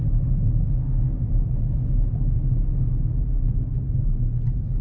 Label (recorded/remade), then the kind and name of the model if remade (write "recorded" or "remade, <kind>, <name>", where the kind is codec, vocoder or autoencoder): recorded